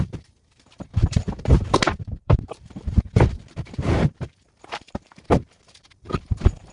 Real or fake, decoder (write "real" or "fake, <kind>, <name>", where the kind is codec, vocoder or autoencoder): fake, vocoder, BigVGAN v2